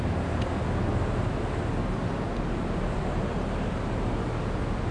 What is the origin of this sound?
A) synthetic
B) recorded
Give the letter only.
B